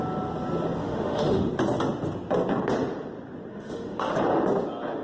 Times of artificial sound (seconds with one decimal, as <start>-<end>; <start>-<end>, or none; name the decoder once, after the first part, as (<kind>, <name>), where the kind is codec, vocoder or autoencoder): 0.8-1.5 (autoencoder, DAC-VAE); 3.5-4.1

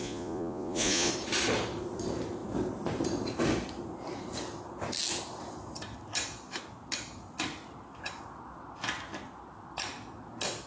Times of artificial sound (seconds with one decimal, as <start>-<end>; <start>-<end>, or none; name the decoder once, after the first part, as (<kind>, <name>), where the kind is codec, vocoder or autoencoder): 0.0-1.1 (vocoder, Vocos)

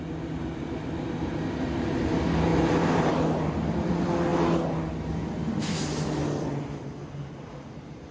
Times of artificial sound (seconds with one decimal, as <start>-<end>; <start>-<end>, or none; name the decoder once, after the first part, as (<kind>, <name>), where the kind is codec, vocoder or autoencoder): 2.5-3.1 (vocoder, BigVGAN v2); 6.2-6.8

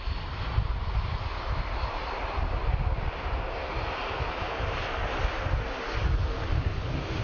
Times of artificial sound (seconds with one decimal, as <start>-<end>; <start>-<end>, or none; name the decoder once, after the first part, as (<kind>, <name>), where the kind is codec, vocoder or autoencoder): none

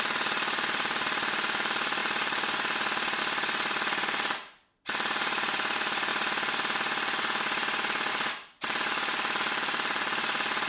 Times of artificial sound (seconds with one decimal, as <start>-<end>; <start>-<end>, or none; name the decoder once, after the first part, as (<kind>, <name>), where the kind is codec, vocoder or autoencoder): 0.0-6.1 (vocoder, BigVGAN v2); 8.1-10.7

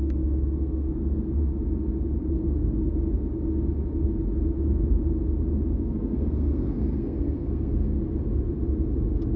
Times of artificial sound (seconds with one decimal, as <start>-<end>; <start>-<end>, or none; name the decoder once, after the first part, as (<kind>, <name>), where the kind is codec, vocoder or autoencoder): 0.0-1.5 (codec, SNAC); 2.3-2.8; 5.8-8.0

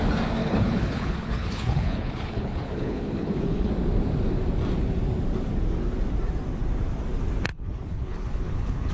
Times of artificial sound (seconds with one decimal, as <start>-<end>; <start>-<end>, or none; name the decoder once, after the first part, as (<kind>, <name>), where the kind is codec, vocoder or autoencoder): 0.4-3.7 (codec, HILCodec); 7.5-8.9

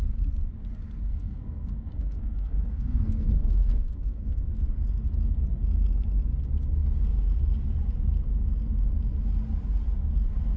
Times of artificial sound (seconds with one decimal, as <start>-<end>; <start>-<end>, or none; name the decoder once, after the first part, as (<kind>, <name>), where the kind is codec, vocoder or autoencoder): 1.1-4.6 (codec, SNAC)